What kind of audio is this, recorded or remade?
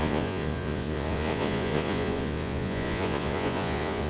remade